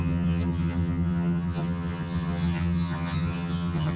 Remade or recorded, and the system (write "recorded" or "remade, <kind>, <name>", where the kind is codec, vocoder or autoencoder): remade, vocoder, HiFi-GAN